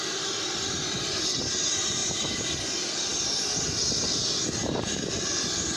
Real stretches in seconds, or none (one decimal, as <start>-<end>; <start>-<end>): 0.0-2.0; 2.6-5.8